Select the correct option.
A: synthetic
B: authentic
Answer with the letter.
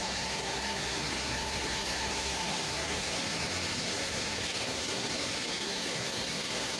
A